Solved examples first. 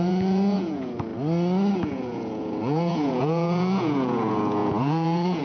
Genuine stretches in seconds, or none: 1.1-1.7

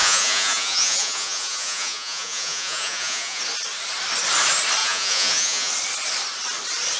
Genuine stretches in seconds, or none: 3.4-4.8; 5.7-7.0

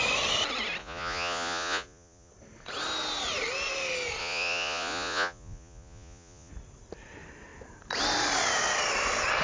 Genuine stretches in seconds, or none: 0.0-0.8; 2.3-4.2; 6.5-9.4

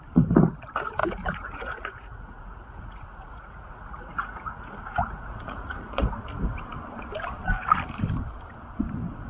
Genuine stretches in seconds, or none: 0.0-1.0; 6.1-9.3